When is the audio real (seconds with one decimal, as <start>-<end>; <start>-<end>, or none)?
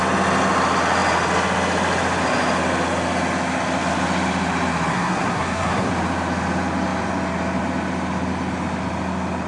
0.0-4.9; 5.9-9.5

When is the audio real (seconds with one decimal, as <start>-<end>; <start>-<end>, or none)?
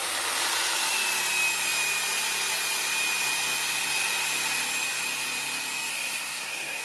0.0-5.9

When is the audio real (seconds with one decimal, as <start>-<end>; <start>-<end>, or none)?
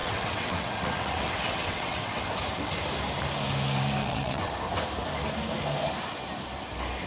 2.2-4.0; 4.5-7.1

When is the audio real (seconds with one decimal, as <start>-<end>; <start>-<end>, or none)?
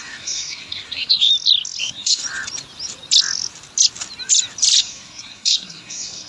1.3-1.8; 2.2-4.8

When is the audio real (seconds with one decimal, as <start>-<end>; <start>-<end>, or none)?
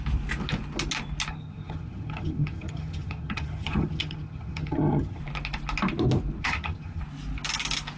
0.0-1.3; 5.2-6.4; 7.0-8.0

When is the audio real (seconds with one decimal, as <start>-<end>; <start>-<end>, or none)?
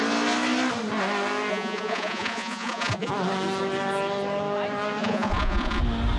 0.0-1.5; 3.1-5.0; 5.8-6.2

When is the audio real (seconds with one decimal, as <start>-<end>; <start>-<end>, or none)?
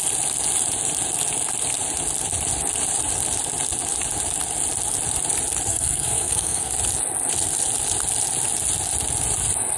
0.0-5.7; 6.7-9.8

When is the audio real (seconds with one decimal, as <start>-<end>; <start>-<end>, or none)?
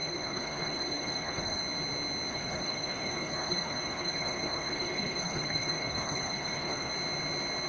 1.6-2.3; 6.9-7.7